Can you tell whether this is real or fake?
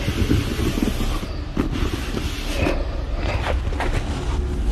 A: real